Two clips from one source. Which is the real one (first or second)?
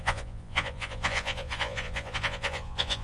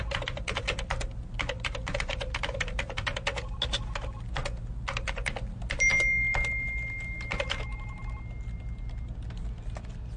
second